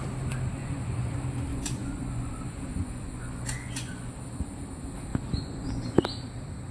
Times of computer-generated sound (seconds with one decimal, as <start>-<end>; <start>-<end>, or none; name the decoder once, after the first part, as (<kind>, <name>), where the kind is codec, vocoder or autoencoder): 0.6-1.1 (vocoder, Vocos); 1.5-4.1; 5.1-5.9